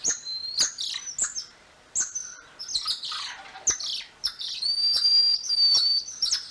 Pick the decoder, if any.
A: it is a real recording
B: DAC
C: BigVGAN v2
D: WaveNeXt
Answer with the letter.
A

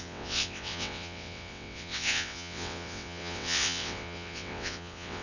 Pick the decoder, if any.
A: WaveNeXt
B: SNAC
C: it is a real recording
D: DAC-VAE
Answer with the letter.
A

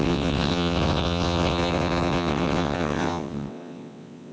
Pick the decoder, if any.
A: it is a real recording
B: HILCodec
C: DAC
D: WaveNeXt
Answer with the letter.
D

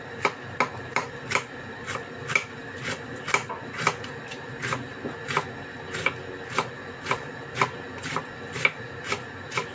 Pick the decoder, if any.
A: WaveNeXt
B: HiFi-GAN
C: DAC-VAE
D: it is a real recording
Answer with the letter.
D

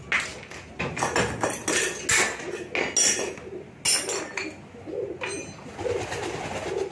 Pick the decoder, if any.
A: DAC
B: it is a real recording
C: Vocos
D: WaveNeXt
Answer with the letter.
B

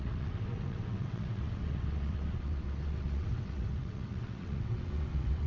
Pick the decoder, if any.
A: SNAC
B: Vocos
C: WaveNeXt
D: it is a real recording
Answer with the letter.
C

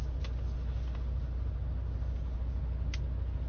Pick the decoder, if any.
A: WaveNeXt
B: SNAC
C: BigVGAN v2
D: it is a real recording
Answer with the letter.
D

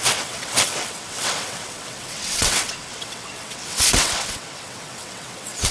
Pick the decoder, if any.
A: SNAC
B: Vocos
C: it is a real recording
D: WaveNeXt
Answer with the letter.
D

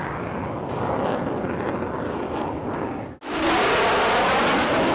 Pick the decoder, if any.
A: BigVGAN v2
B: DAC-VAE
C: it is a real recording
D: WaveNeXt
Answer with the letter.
C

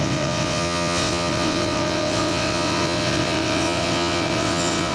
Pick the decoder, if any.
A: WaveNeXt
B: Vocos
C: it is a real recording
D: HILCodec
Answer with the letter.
A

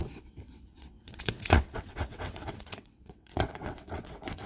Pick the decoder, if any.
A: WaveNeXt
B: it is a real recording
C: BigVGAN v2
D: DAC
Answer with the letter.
A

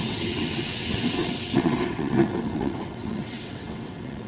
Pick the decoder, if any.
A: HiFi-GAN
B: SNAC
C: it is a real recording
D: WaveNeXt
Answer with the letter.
D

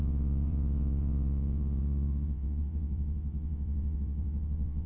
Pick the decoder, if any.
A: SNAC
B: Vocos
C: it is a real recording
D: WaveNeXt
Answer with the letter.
D